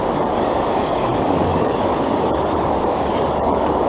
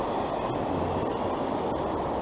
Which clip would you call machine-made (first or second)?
first